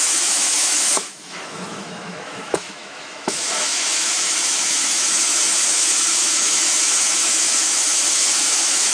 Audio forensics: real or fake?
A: fake